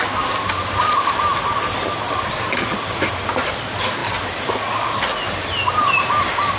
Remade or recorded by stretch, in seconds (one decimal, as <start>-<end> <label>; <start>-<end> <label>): 0.0-6.6 recorded